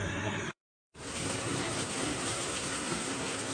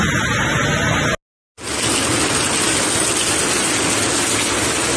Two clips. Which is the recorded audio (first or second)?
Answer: second